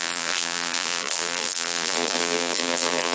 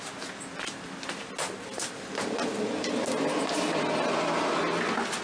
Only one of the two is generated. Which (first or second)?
first